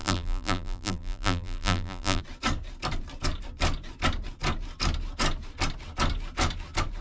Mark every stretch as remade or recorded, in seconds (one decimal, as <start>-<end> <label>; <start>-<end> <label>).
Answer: 0.0-2.2 remade; 2.2-7.0 recorded